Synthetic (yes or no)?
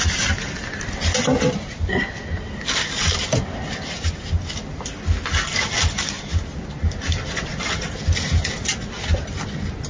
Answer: no